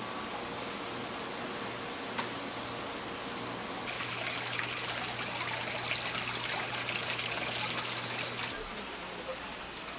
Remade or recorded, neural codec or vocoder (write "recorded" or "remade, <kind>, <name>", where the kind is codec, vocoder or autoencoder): recorded